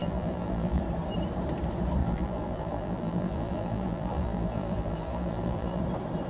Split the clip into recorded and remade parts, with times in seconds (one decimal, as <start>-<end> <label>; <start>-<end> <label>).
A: 0.0-0.8 remade; 0.8-2.0 recorded; 2.0-5.8 remade; 5.8-6.3 recorded